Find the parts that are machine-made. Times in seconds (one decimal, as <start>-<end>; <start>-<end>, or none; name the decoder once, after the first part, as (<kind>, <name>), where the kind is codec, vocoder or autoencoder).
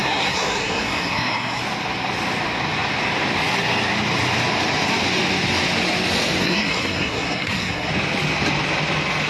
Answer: 0.0-1.6 (codec, SNAC); 6.4-7.9